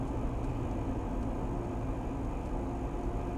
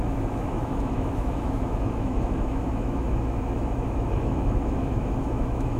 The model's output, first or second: second